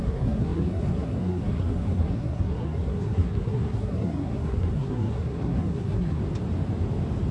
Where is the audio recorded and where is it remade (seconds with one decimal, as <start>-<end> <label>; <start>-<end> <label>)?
0.0-6.2 remade; 6.2-7.3 recorded